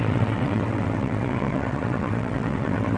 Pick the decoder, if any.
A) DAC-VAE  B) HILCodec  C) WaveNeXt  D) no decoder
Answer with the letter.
C